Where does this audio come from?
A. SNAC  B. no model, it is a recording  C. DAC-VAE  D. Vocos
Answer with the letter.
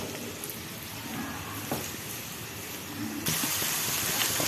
B